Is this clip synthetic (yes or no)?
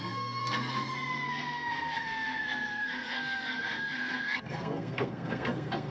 yes